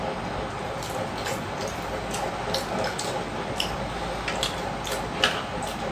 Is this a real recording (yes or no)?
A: yes